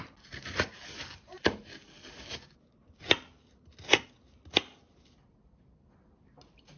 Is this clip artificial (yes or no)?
no